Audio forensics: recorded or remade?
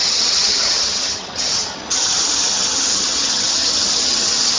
remade